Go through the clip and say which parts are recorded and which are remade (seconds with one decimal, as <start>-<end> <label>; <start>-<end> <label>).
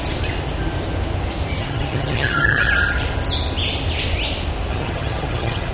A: 0.0-1.6 recorded; 1.6-2.7 remade; 2.7-4.7 recorded; 4.7-5.7 remade